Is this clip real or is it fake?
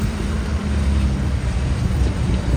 fake